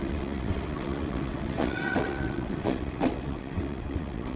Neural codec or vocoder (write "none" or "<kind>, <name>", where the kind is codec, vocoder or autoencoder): vocoder, WaveNeXt